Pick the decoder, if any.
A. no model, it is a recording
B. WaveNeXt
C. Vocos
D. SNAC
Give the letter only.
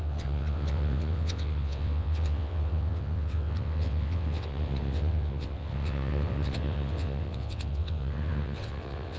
B